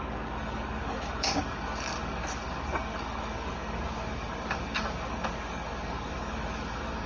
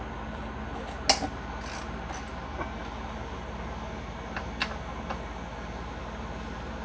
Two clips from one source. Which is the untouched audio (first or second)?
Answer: second